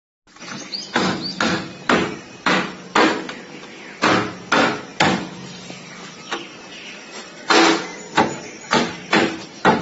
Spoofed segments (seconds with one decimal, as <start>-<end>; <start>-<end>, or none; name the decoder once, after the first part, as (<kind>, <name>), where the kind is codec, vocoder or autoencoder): 1.3-2.5 (vocoder, BigVGAN v2); 7.9-9.8